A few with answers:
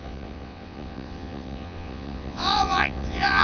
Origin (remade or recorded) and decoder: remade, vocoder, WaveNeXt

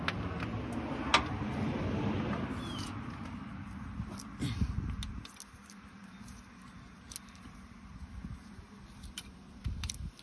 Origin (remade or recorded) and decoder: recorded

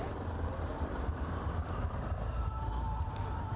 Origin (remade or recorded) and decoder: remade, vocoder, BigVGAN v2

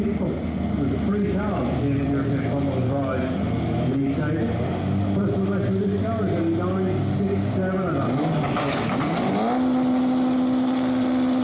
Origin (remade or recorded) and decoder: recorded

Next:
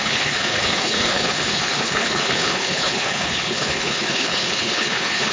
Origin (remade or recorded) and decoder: remade, codec, HILCodec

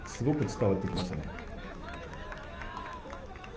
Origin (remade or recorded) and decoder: remade, autoencoder, DAC-VAE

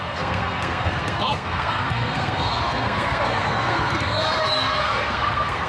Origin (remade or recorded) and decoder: remade, codec, SNAC